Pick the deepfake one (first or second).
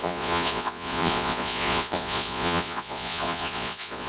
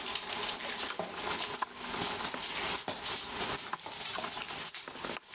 first